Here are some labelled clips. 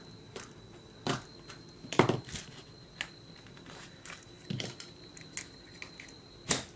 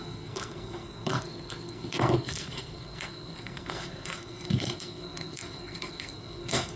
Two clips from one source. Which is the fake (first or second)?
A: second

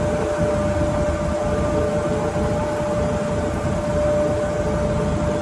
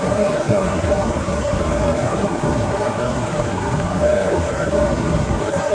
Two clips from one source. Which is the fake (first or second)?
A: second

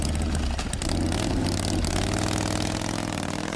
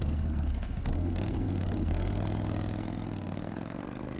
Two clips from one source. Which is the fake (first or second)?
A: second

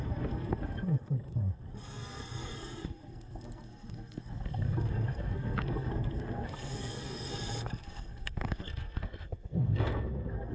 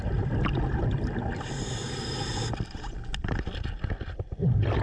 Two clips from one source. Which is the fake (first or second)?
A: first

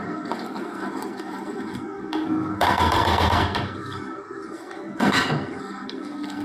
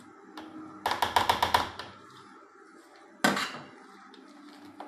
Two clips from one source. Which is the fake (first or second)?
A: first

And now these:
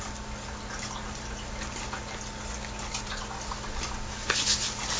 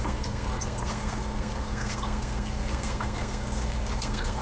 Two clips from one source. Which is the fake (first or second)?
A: second